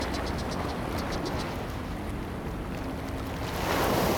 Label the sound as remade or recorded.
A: recorded